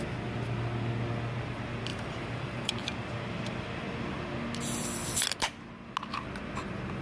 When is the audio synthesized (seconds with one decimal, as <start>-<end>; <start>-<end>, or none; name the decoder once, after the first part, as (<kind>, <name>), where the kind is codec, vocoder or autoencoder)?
1.9-2.7 (vocoder, BigVGAN v2)